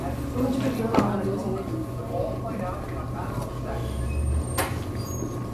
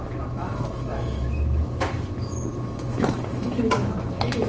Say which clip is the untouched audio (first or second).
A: first